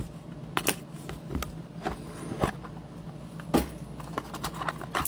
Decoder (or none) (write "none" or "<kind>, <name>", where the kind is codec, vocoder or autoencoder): none